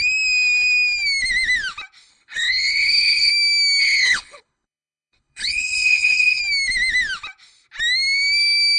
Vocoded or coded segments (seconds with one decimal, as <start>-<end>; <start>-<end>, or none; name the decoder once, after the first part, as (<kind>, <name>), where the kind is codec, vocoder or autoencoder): 2.1-3.3 (codec, HILCodec); 3.8-6.4